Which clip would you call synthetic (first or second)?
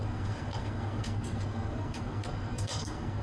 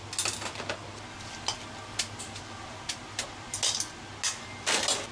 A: first